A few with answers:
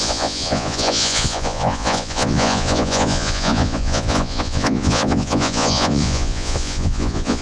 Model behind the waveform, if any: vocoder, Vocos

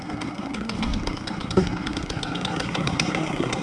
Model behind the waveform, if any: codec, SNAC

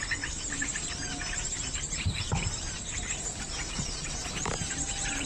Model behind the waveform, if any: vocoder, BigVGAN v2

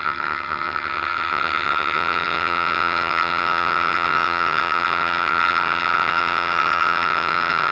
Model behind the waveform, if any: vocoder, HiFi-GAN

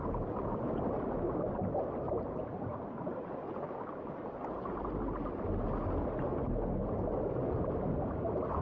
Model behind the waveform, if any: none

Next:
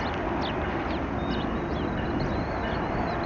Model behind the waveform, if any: none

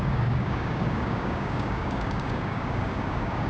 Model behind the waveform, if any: codec, DAC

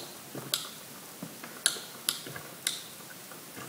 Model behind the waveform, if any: none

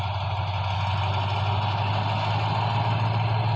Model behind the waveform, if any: none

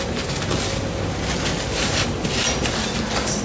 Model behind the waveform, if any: none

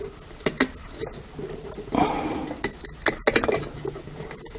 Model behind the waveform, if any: none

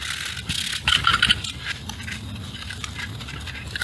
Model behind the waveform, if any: none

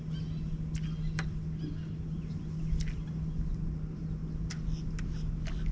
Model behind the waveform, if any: none